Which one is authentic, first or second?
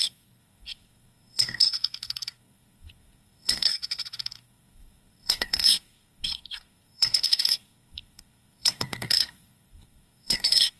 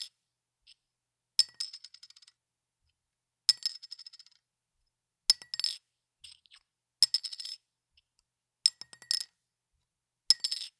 second